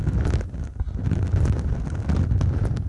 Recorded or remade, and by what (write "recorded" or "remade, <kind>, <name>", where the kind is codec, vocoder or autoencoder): recorded